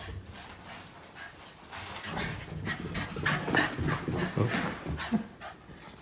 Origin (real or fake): real